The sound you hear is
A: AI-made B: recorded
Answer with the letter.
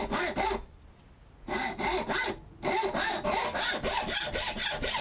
B